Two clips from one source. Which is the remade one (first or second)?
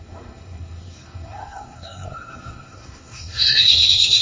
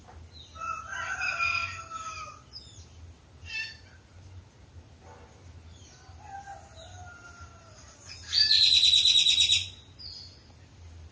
first